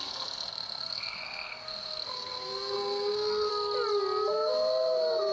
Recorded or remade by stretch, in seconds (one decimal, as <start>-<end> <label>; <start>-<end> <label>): 0.0-3.5 remade; 3.5-4.3 recorded; 4.3-5.3 remade